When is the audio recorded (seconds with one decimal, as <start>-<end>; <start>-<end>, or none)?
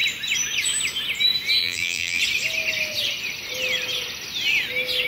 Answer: 0.0-1.6; 2.2-5.1